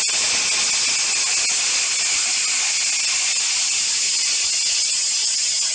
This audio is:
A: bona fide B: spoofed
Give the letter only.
A